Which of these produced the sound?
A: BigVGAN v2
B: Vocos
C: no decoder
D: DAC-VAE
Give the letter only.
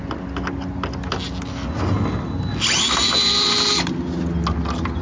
C